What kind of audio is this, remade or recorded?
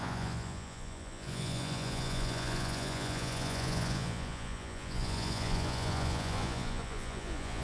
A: remade